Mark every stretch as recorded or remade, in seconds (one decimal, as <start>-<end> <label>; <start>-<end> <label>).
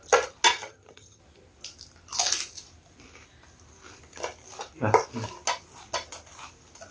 0.0-0.5 recorded; 0.5-1.2 remade; 1.2-6.9 recorded